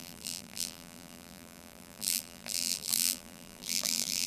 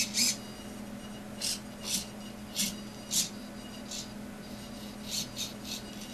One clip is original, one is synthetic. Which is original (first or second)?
second